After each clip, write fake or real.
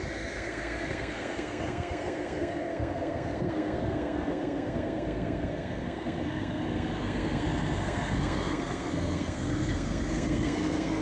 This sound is fake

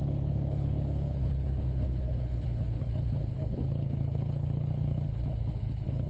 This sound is fake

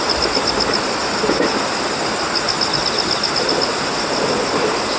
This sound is real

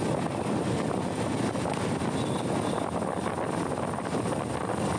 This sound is real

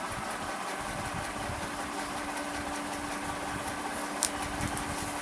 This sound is fake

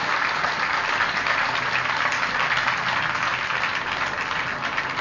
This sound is real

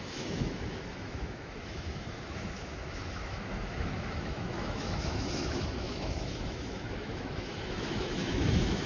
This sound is fake